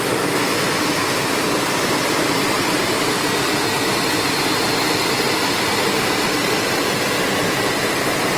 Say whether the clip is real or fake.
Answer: real